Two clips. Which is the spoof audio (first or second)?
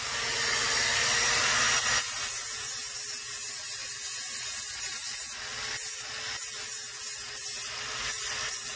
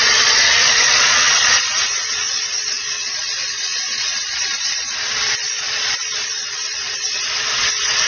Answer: second